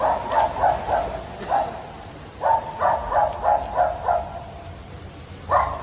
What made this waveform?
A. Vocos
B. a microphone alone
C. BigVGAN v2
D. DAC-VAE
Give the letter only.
B